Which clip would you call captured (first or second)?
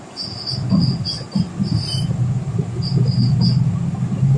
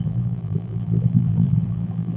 first